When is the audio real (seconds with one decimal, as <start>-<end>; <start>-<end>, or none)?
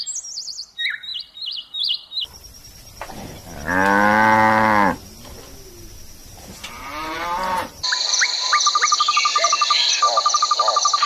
0.0-6.2; 8.6-9.3; 9.9-11.1